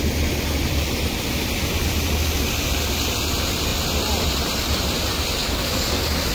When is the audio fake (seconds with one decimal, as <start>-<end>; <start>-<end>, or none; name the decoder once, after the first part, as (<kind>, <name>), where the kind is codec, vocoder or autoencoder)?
5.4-6.3 (codec, DAC)